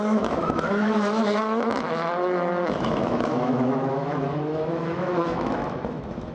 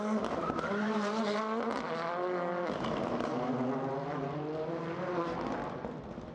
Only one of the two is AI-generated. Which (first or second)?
first